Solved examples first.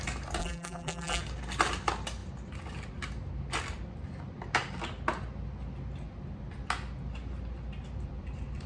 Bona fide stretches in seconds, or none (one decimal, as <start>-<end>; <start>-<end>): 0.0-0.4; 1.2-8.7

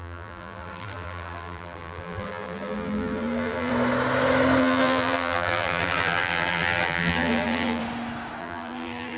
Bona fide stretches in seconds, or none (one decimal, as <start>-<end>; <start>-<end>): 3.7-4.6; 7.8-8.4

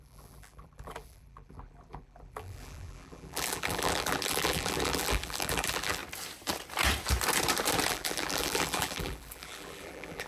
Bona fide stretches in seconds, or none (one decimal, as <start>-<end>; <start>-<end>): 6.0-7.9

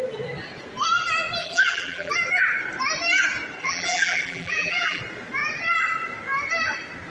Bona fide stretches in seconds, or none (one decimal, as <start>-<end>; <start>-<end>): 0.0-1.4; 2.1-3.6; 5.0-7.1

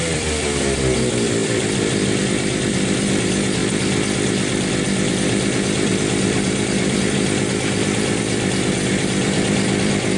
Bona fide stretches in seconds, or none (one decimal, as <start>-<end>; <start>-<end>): 3.6-5.1

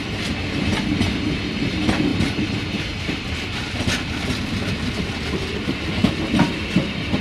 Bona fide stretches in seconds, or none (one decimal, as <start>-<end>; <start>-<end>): 0.0-2.1; 3.2-7.2

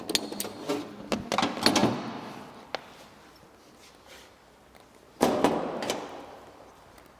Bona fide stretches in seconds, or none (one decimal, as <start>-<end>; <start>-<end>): 0.0-7.2

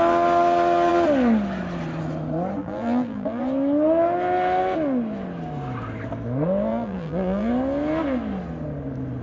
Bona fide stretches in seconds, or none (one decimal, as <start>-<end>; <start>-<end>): 0.0-2.6; 3.4-6.7; 7.5-9.2